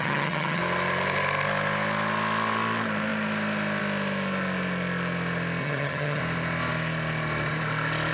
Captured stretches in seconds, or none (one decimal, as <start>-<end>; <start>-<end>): 0.6-5.6; 6.2-8.1